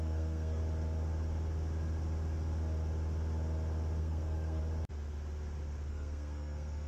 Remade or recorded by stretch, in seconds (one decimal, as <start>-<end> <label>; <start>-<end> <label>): 0.0-0.6 remade; 0.6-4.0 recorded; 4.0-4.6 remade; 4.6-5.9 recorded; 5.9-6.9 remade